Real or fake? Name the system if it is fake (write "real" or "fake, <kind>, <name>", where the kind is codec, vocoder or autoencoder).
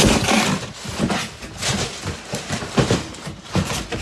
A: real